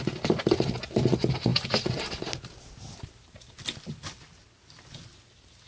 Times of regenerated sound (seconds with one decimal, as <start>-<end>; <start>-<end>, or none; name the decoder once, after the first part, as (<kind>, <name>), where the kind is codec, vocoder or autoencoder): none